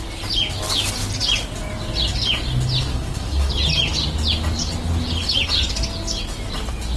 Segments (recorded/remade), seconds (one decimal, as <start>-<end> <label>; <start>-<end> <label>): 0.0-2.9 recorded; 2.9-3.5 remade; 3.5-7.0 recorded